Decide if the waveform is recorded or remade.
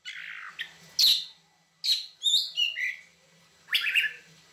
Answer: recorded